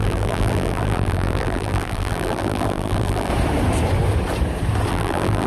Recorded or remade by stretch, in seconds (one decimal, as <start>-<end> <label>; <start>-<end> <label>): 0.0-3.3 remade; 3.3-4.9 recorded; 4.9-5.5 remade